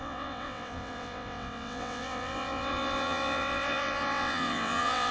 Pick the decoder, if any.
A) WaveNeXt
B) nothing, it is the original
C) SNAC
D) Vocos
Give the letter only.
A